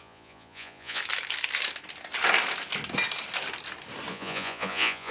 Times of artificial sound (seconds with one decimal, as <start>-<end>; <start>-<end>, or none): 0.0-1.0; 4.1-5.1